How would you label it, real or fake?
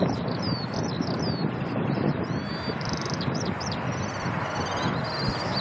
real